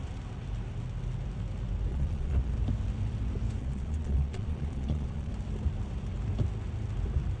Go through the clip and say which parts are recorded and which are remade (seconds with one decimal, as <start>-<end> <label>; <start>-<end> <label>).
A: 0.0-1.9 recorded; 1.9-2.5 remade; 2.5-3.6 recorded; 3.6-5.3 remade; 5.3-7.4 recorded